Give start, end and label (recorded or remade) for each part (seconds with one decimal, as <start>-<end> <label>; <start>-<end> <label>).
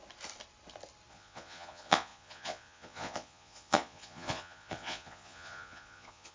0.0-1.1 recorded; 1.1-6.3 remade